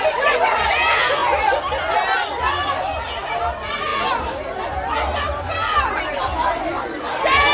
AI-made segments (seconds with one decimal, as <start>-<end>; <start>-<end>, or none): none